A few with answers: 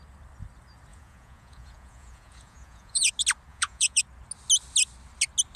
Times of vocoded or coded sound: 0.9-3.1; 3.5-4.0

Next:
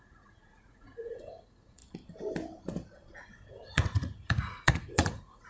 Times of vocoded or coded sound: 0.0-1.8; 3.2-5.5

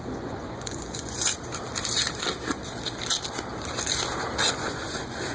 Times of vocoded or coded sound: 0.0-1.3; 4.5-5.3

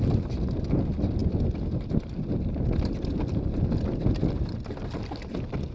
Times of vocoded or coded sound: none

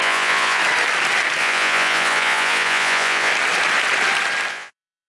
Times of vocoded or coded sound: 0.0-0.6; 1.4-3.3; 4.5-5.1

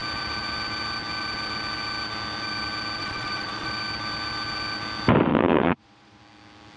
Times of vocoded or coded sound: 3.0-3.7; 5.3-6.2

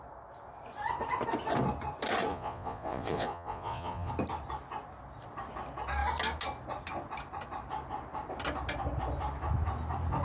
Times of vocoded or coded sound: 2.3-4.1

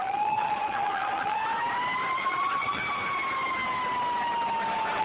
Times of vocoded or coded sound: 0.0-1.4; 2.1-2.8